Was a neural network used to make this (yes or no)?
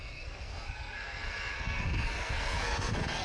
yes